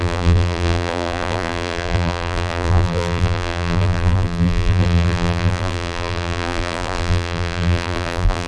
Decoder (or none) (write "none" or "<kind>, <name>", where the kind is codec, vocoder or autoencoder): vocoder, BigVGAN v2